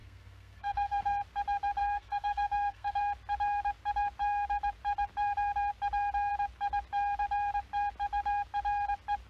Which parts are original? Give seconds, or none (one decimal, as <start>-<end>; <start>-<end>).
1.2-1.8; 3.0-9.3